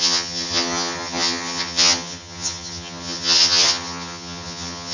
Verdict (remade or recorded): remade